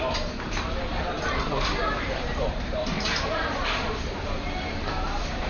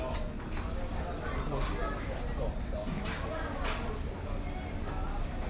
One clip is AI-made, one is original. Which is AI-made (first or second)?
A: first